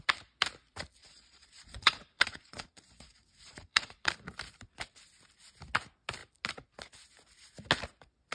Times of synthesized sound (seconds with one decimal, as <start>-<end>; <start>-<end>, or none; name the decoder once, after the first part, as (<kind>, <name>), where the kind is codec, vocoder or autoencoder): 1.0-4.1 (vocoder, Vocos)